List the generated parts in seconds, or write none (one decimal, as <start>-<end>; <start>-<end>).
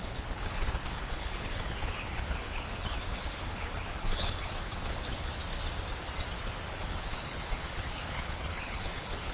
0.0-5.3; 6.7-9.3